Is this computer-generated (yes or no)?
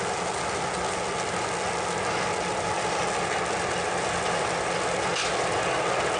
no